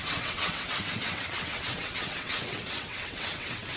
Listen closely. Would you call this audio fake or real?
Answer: fake